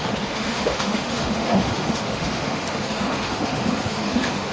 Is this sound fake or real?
fake